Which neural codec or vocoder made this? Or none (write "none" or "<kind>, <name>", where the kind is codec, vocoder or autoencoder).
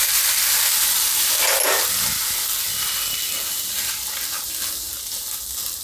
none